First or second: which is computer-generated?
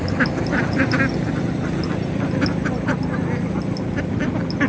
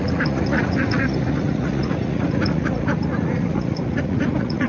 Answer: second